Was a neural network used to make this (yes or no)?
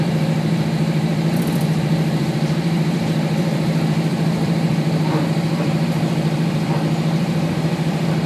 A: yes